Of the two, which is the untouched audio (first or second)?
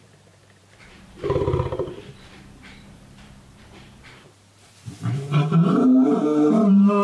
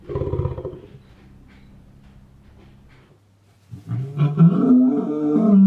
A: second